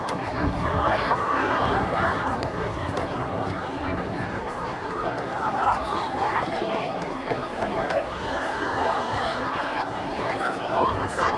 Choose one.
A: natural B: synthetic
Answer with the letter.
B